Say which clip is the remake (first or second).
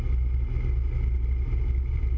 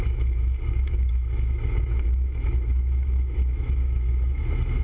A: second